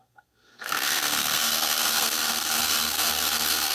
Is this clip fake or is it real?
fake